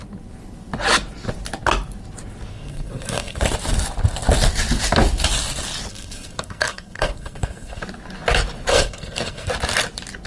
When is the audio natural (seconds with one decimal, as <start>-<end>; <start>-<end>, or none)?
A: 0.0-2.5; 3.4-5.9; 7.8-8.7; 9.5-10.3